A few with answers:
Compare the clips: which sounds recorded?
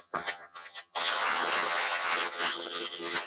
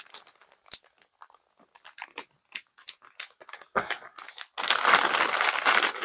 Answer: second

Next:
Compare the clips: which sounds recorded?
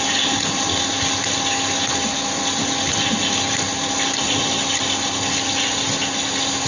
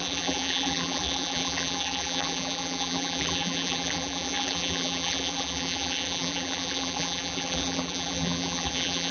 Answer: first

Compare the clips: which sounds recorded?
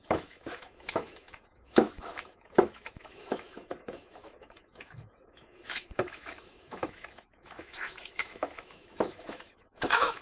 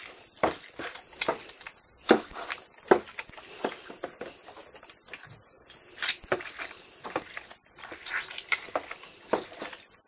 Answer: second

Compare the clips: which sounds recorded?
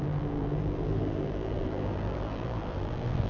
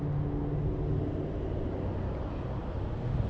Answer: second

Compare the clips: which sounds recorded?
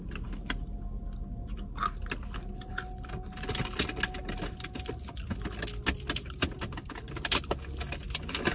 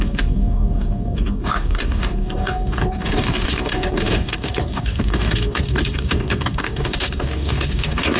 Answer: first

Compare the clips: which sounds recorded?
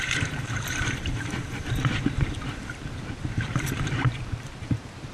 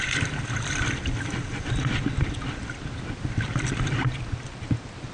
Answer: second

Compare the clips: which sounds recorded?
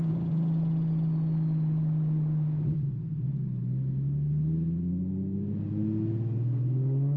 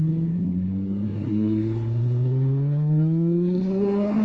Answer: first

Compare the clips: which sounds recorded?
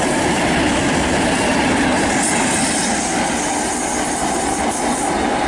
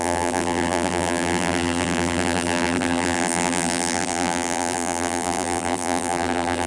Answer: first